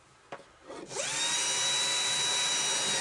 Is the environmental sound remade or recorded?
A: recorded